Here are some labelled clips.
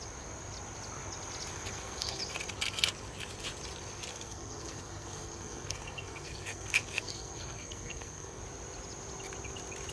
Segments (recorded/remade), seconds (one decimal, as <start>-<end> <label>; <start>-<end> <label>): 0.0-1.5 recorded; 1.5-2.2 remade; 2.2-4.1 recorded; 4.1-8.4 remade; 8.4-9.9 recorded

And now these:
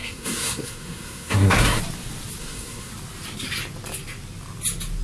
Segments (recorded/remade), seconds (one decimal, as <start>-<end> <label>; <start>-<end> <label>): 0.0-1.8 remade; 1.8-2.4 recorded; 2.4-2.9 remade; 2.9-5.0 recorded

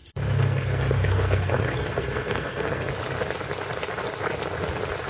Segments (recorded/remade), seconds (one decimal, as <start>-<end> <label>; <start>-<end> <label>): 0.0-2.9 remade; 2.9-5.1 recorded

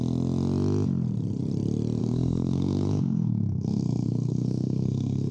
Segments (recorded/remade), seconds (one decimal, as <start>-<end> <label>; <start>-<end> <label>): 0.0-2.0 recorded; 2.0-5.3 remade